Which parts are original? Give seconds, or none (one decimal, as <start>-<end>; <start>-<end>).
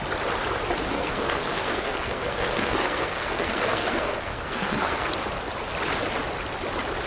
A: 0.0-0.9; 5.1-7.1